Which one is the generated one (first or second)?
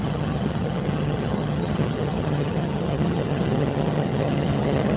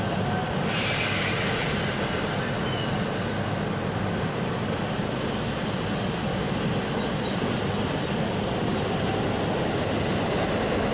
first